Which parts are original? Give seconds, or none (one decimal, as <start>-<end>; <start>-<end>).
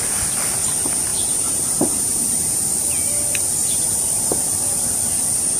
0.0-1.1; 2.7-3.6; 4.4-5.6